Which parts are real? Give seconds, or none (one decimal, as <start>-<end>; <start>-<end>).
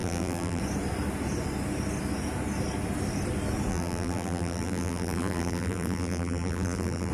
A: 0.6-3.7